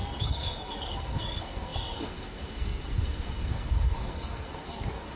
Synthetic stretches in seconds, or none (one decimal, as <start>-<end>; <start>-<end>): 0.0-5.2